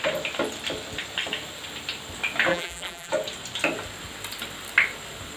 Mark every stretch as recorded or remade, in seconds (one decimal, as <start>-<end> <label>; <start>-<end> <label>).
0.0-2.5 recorded; 2.5-3.1 remade; 3.1-5.4 recorded